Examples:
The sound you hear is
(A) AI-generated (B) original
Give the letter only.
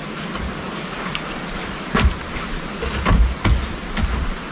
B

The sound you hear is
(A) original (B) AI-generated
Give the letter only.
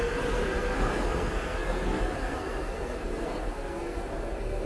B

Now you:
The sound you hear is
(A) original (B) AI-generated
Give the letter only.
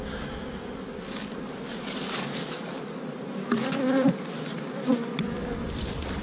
A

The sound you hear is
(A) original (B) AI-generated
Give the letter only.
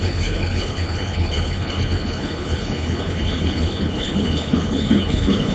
B